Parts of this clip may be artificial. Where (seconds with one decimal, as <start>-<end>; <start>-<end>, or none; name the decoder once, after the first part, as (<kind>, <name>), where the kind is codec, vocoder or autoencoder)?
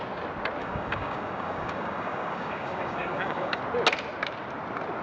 0.6-3.6 (codec, DAC)